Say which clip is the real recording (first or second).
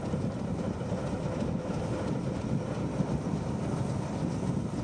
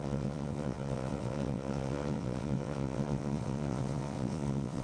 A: first